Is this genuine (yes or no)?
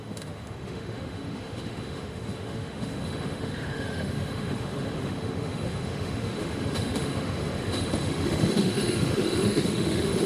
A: no